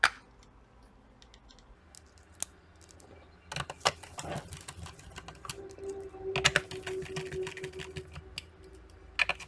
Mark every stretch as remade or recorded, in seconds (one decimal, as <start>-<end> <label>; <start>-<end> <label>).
0.0-9.5 recorded